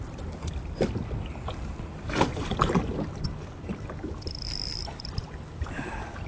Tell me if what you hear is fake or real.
real